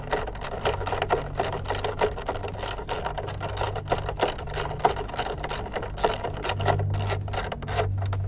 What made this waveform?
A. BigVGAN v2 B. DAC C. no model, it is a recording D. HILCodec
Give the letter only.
C